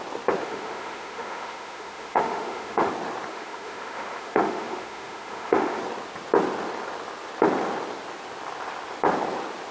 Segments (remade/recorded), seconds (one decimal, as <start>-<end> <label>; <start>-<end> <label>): 0.0-0.4 recorded; 0.4-2.9 remade; 2.9-3.3 recorded; 3.3-5.8 remade; 5.8-9.7 recorded